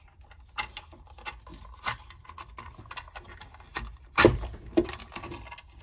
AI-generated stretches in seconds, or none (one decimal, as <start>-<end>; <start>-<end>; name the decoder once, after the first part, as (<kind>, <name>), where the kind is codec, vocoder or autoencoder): none